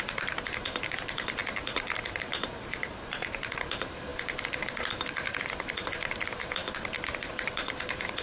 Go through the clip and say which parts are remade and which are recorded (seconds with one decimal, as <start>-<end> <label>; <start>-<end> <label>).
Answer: 0.0-8.2 remade